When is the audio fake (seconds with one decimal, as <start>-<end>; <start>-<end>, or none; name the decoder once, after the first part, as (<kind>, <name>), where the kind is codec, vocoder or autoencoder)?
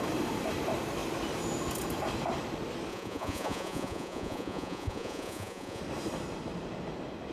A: 2.9-5.8 (vocoder, Vocos)